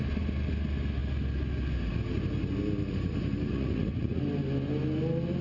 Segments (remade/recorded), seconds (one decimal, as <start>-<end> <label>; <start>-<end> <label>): 0.0-3.5 recorded; 3.5-4.2 remade; 4.2-5.4 recorded